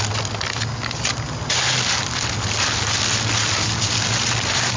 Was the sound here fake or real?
real